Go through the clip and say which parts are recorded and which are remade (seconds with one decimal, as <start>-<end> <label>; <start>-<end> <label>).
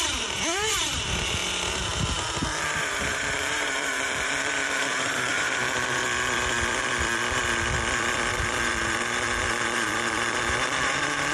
0.0-1.4 remade; 1.4-2.6 recorded; 2.6-6.0 remade; 6.0-8.3 recorded; 8.3-11.3 remade